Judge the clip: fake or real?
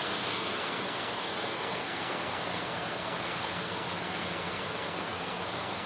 fake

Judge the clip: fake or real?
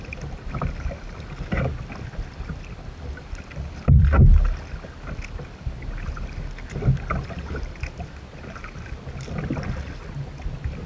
real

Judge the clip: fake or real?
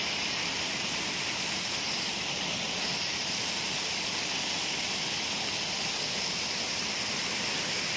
real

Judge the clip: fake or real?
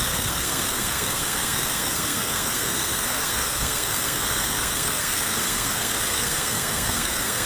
fake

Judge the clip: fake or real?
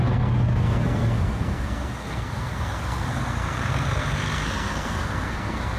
fake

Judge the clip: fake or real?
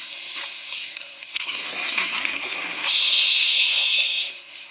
fake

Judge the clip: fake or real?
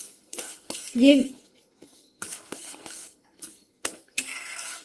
fake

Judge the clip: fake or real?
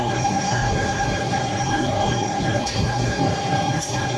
fake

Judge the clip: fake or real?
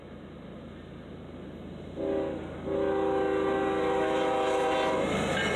real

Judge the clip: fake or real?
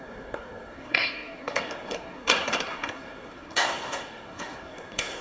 fake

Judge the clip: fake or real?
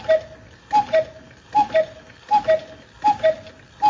real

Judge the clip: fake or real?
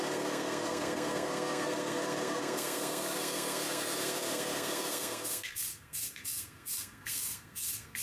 fake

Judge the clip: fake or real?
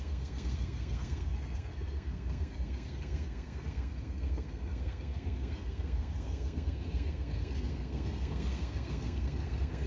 fake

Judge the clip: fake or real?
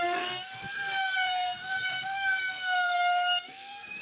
fake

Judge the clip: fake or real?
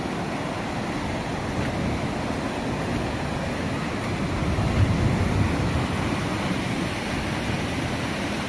real